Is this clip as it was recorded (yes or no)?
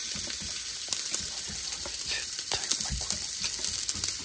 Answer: yes